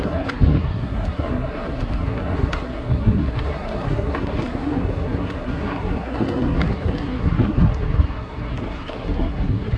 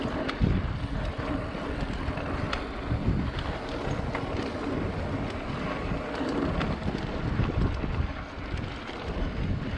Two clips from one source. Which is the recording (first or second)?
second